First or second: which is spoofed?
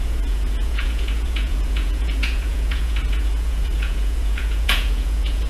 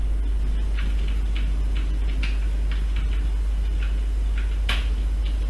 first